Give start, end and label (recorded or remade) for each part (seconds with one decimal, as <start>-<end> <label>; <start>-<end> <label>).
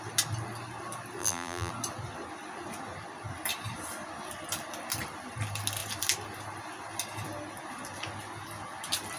0.0-1.2 recorded; 1.2-1.7 remade; 1.7-9.2 recorded